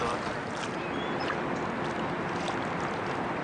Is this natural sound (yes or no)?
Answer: yes